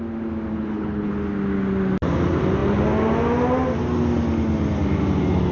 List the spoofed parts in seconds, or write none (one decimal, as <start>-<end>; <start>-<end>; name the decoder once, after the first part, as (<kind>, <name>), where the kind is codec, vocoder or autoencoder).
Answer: 0.5-1.1 (codec, HILCodec)